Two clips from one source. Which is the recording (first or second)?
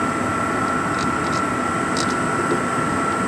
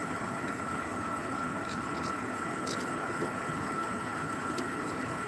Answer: first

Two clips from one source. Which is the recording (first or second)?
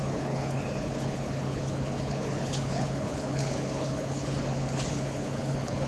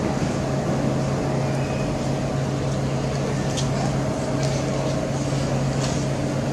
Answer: second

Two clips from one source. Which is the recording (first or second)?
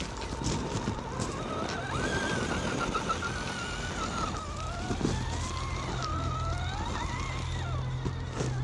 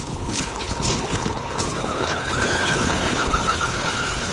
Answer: first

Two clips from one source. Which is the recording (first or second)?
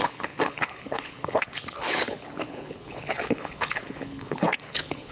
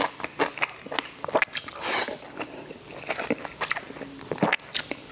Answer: second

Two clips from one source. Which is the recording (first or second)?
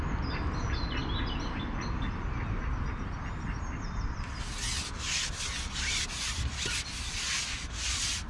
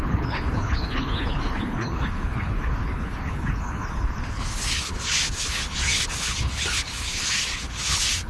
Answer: first